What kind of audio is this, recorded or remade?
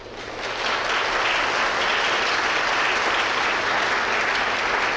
recorded